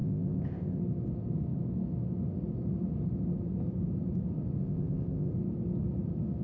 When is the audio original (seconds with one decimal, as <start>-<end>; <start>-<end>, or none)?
0.8-4.6; 5.3-6.4

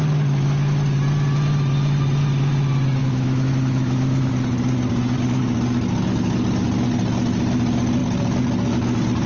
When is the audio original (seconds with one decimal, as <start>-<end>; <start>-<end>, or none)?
0.0-3.0; 4.3-9.3

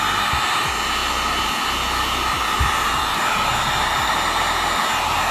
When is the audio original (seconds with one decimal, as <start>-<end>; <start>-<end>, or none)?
0.0-5.3